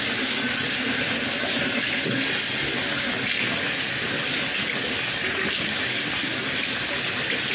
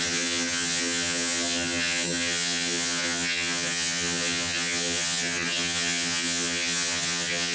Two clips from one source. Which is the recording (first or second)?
first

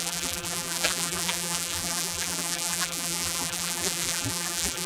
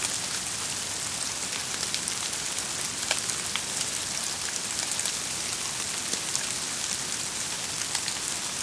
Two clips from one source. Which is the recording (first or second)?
second